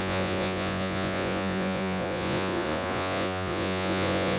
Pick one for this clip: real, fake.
fake